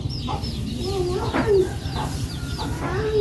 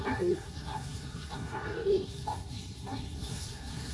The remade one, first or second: second